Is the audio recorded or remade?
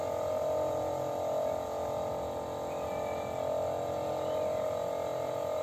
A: recorded